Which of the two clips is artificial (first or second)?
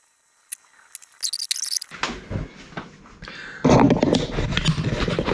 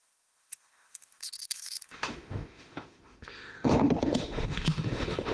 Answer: second